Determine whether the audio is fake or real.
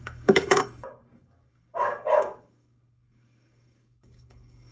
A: fake